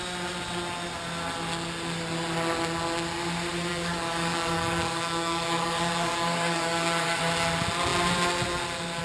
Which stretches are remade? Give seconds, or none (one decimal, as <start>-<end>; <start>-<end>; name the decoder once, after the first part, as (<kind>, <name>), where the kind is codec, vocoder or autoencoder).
3.7-7.2 (codec, DAC)